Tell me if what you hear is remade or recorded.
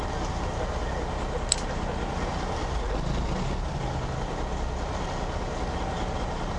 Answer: recorded